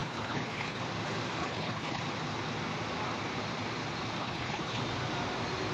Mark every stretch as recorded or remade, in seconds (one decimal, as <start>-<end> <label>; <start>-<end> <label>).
0.0-0.8 remade; 0.8-1.4 recorded; 1.4-2.0 remade; 2.0-4.2 recorded; 4.2-4.8 remade; 4.8-5.7 recorded